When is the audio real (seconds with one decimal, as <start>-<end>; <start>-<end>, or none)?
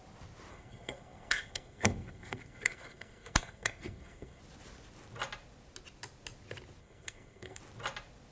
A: 0.0-0.5; 4.4-6.8; 7.6-8.3